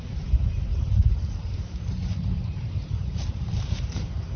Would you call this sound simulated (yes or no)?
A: yes